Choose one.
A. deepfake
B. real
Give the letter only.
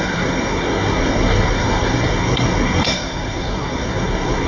A